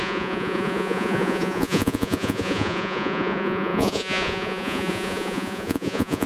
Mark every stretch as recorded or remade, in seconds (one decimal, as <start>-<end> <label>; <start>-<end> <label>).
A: 0.0-6.3 remade